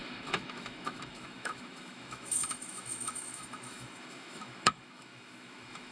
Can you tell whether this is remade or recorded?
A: remade